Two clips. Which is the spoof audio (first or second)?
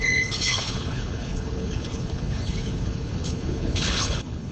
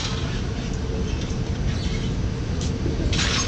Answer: first